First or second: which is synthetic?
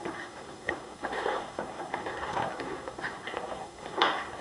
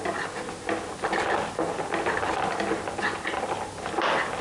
first